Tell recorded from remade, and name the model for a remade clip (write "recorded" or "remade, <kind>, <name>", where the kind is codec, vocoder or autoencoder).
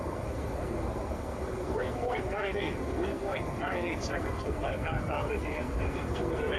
remade, codec, SNAC